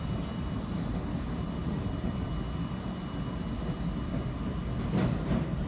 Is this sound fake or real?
real